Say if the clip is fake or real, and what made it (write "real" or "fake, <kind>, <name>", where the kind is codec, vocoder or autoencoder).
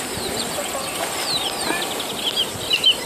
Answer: real